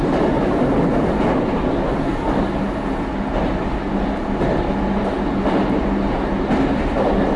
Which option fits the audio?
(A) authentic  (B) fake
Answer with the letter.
A